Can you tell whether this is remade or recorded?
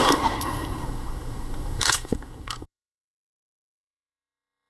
remade